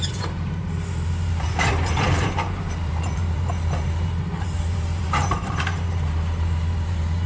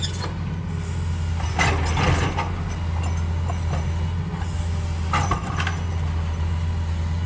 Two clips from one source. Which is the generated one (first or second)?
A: first